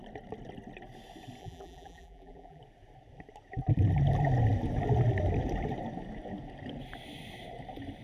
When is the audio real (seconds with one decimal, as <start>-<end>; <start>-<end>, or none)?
0.0-1.4; 2.6-8.0